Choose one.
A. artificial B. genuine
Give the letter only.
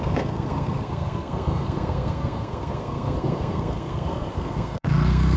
A